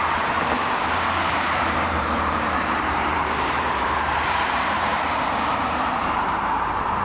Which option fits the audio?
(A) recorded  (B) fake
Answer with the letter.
B